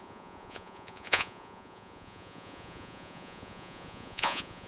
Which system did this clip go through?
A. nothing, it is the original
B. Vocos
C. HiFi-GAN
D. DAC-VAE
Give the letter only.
B